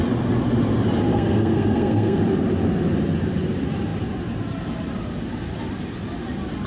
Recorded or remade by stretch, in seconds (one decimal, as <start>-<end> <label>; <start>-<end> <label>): 0.0-1.1 recorded; 1.1-2.2 remade; 2.2-6.7 recorded